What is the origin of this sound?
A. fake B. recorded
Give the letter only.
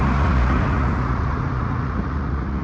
A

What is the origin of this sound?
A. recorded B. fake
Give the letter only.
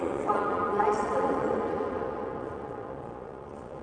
B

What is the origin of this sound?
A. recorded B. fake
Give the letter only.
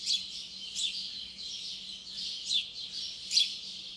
A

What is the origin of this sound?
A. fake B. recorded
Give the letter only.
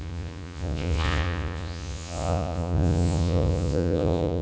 A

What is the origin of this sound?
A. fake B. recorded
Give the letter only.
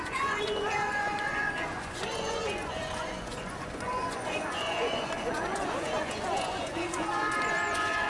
A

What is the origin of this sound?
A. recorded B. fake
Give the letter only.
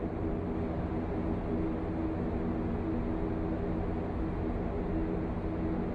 A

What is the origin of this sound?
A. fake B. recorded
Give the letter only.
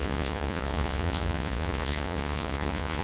A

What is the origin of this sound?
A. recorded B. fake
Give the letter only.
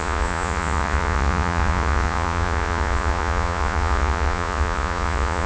B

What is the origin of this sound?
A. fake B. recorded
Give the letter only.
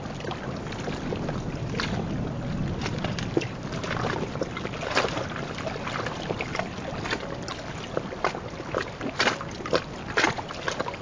B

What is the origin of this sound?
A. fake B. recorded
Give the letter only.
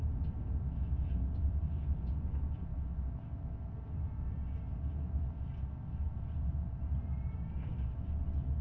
B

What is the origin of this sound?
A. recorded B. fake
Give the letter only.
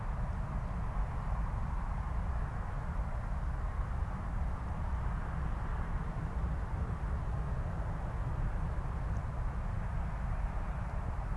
A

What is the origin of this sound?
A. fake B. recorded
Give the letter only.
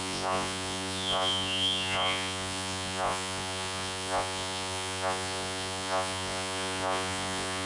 A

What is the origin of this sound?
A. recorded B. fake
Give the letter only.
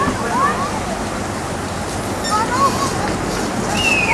A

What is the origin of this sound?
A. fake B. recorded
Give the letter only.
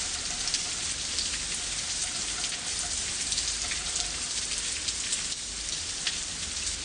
B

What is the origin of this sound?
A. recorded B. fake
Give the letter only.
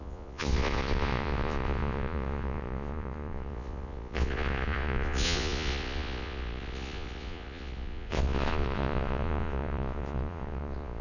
B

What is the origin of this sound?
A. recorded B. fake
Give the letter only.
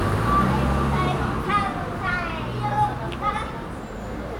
A